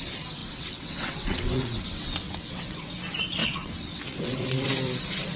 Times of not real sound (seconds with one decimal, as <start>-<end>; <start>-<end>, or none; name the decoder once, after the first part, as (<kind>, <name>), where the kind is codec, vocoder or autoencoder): 0.4-2.9 (vocoder, WaveNeXt); 3.4-4.7

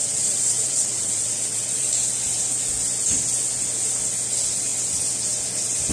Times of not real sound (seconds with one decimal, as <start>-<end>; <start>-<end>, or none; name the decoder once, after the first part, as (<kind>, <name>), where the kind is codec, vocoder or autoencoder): 0.0-1.9 (vocoder, WaveNeXt)

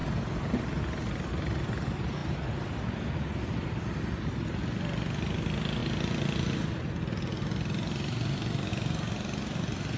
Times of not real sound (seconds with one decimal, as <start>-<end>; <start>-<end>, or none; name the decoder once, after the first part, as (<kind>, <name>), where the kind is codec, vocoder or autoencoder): none

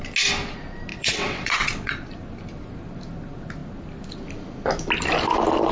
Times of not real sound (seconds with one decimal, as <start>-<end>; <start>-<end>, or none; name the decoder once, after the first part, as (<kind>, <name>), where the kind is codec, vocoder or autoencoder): 0.9-2.1 (vocoder, WaveNeXt)